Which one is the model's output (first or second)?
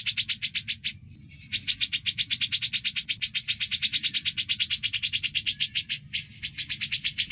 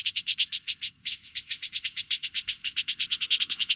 second